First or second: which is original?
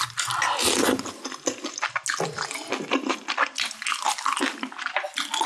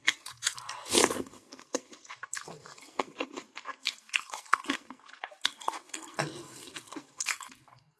first